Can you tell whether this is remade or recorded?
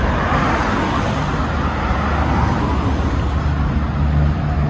recorded